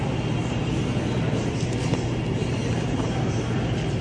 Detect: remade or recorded recorded